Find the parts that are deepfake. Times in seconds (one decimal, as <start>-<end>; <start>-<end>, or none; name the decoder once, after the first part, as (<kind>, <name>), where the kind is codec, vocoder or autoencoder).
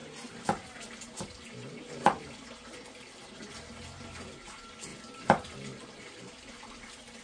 none